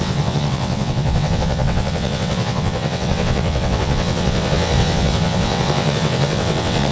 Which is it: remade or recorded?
remade